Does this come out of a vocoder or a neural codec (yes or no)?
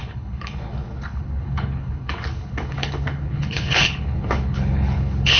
yes